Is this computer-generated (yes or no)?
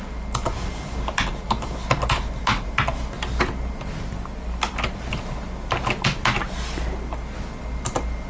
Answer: no